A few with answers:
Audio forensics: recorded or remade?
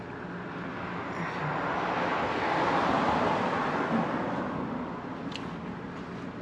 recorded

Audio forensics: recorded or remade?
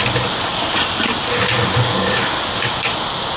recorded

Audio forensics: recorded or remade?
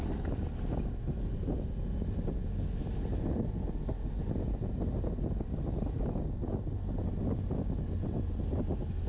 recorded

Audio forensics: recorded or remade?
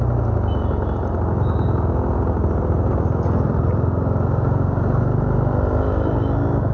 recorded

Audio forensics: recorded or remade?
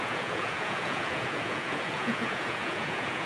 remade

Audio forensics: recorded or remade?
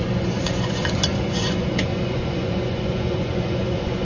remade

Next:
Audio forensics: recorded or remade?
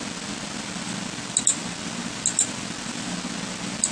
recorded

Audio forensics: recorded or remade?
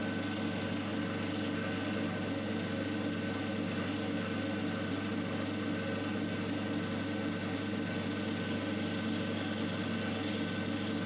recorded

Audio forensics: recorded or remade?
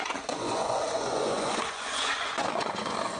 remade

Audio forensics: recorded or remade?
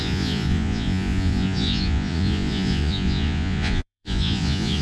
remade